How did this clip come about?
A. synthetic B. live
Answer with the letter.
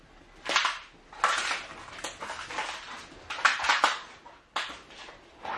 B